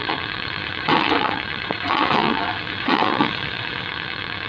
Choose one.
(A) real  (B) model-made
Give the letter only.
B